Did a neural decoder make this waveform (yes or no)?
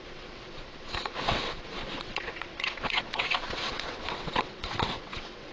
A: yes